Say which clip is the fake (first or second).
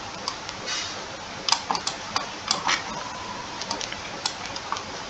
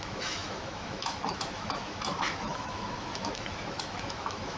second